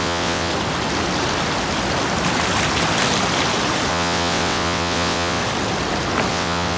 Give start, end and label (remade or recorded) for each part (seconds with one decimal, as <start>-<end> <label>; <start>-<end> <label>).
0.0-0.5 remade; 0.5-3.9 recorded; 3.9-5.4 remade; 5.4-6.3 recorded; 6.3-6.8 remade